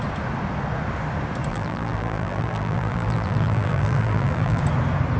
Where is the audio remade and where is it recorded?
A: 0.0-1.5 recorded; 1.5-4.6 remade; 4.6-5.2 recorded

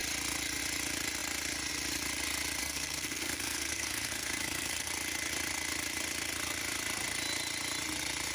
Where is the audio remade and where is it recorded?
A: 0.0-2.6 recorded; 2.6-4.9 remade; 4.9-8.3 recorded

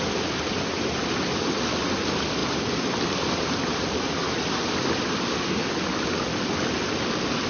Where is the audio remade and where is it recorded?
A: 0.0-7.5 recorded